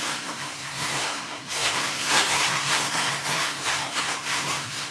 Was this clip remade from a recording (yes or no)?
yes